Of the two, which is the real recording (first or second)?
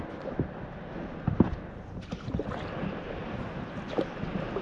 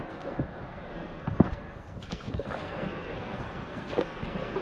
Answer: first